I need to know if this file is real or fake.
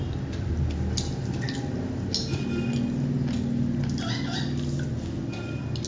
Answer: real